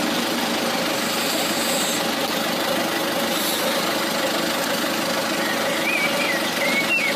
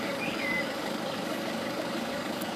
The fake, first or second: second